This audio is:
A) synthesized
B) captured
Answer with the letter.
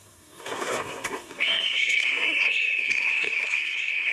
A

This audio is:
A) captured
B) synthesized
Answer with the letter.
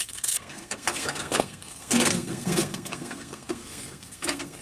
B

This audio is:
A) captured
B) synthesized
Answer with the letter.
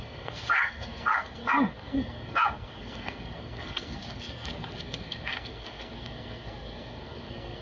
B